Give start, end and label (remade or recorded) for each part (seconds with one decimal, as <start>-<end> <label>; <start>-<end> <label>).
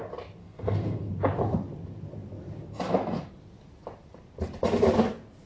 0.0-0.4 recorded; 0.4-1.1 remade; 1.1-5.5 recorded